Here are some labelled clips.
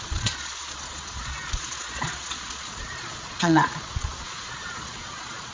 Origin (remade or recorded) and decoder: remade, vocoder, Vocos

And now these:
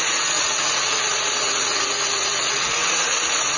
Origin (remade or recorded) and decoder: remade, vocoder, Vocos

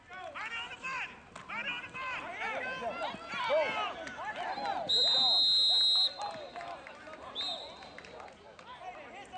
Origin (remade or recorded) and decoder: recorded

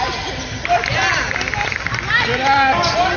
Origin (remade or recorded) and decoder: recorded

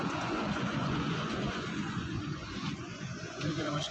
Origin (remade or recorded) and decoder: remade, vocoder, Vocos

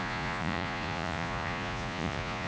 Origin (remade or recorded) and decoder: remade, vocoder, Vocos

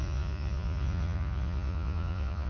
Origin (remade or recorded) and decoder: remade, vocoder, Vocos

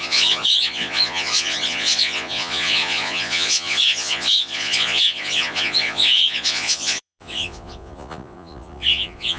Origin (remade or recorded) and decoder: remade, vocoder, Vocos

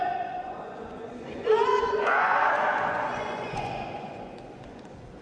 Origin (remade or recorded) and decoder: remade, vocoder, Vocos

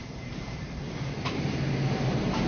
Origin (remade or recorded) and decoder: recorded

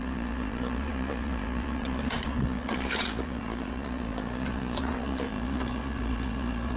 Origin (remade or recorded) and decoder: remade, vocoder, Vocos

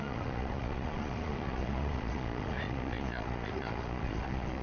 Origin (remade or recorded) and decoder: remade, vocoder, Vocos